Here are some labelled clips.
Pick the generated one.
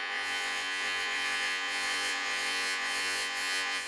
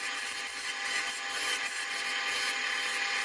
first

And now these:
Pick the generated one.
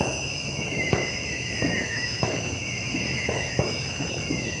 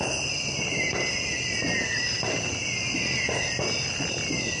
first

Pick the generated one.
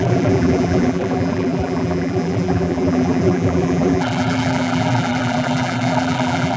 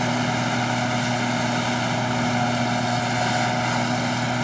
first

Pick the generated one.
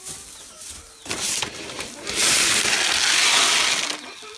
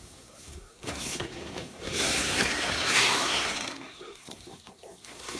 second